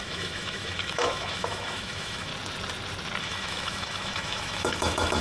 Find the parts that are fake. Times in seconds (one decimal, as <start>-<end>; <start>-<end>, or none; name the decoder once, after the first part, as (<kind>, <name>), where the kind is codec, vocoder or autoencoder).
0.0-2.3 (autoencoder, DAC-VAE); 3.2-5.2